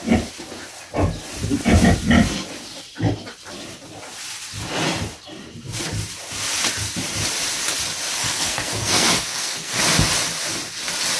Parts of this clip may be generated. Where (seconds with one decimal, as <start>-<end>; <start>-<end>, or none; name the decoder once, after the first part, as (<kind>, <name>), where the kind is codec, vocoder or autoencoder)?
8.2-9.8 (codec, SNAC)

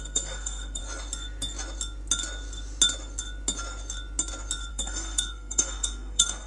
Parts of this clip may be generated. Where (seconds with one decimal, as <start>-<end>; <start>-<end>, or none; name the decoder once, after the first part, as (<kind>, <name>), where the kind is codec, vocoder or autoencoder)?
0.0-0.8 (codec, SNAC); 4.7-6.5

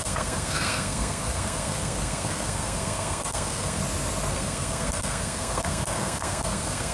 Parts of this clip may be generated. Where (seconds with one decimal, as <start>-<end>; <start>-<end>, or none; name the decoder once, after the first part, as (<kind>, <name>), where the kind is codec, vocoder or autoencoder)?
0.0-3.8 (codec, SNAC); 4.3-6.9

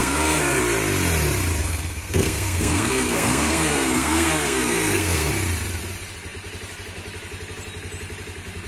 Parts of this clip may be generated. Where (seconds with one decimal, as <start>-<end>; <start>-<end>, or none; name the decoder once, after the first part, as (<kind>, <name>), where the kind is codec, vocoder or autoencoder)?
0.0-0.6 (codec, SNAC); 1.6-5.3

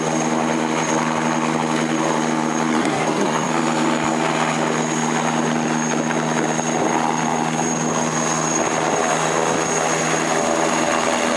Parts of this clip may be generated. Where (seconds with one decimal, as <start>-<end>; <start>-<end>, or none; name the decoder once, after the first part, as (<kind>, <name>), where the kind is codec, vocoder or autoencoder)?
2.7-3.5 (codec, SNAC)

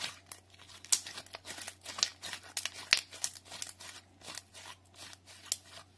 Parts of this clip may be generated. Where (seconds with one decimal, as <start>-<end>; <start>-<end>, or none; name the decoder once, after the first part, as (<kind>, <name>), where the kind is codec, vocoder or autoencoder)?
none

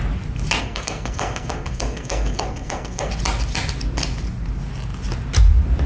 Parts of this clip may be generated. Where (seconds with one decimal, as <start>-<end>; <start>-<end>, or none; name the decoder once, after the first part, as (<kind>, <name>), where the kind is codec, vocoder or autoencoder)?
0.6-3.1 (codec, SNAC)

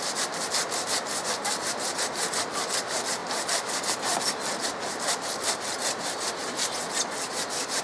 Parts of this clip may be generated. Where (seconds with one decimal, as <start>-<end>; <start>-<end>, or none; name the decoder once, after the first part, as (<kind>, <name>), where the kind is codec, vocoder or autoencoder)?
none